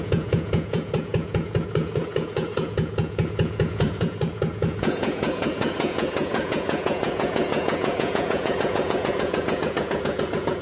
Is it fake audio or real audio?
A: fake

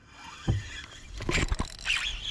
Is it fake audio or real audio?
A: real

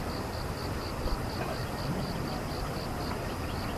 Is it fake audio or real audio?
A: fake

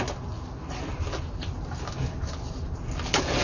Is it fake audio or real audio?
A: real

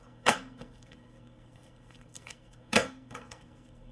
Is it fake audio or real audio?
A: fake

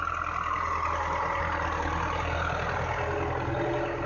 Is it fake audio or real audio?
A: real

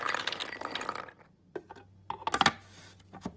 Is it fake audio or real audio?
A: real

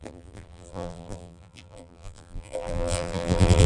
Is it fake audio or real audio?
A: fake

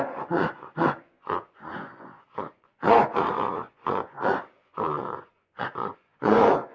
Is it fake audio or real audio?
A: fake